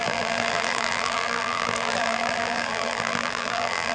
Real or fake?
fake